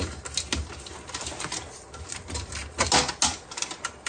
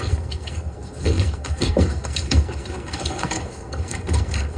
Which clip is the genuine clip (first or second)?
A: first